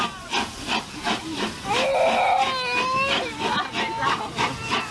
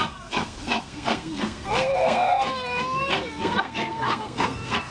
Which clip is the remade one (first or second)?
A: second